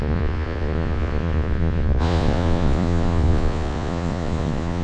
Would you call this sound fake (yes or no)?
yes